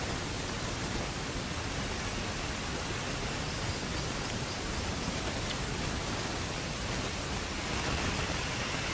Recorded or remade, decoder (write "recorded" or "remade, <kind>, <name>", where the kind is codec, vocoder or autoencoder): recorded